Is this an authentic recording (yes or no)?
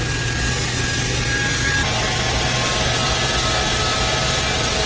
yes